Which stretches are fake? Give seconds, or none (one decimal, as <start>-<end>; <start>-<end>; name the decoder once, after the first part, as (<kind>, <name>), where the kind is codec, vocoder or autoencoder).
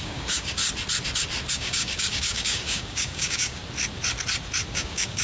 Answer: 0.0-0.6 (codec, DAC); 1.5-3.6; 4.7-5.2